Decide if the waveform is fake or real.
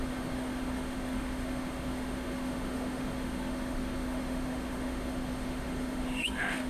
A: fake